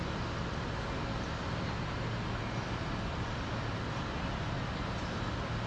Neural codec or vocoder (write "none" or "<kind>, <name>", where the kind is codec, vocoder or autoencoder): none